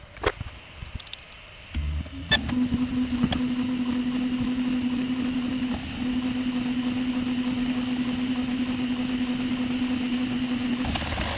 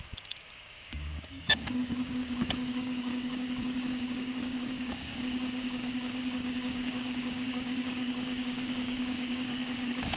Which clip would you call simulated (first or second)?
second